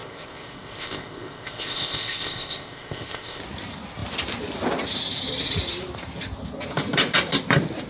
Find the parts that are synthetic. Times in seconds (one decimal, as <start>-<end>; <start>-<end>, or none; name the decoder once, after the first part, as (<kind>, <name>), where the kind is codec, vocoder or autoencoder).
0.0-3.4 (codec, ZipCodec)